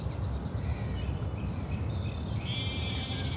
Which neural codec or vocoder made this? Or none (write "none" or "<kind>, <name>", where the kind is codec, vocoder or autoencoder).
none